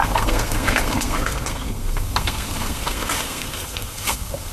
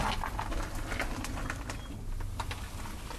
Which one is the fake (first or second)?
first